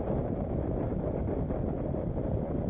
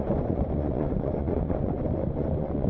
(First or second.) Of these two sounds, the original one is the first